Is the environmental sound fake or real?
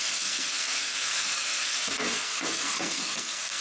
fake